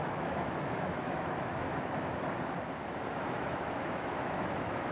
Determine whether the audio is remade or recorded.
remade